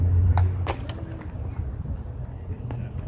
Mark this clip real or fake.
real